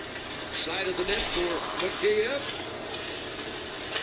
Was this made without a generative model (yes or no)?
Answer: yes